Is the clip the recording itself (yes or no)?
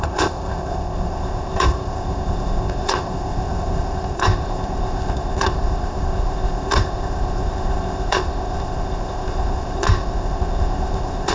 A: no